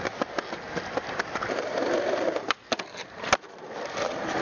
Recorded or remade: recorded